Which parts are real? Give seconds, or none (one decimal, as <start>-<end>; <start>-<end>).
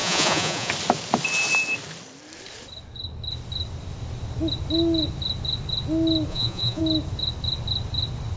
0.7-6.3; 6.8-8.4